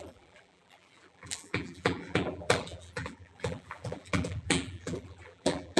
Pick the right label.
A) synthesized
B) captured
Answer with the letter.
A